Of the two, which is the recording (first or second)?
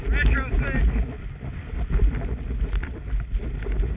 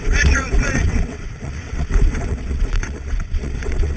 first